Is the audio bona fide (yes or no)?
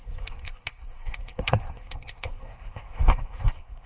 no